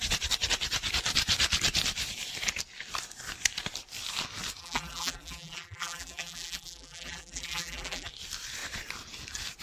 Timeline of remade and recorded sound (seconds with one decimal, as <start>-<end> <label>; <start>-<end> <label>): 0.0-4.6 recorded; 4.6-8.1 remade; 8.1-9.6 recorded